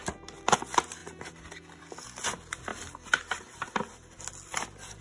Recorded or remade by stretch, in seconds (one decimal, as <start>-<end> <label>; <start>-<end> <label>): 0.0-5.0 recorded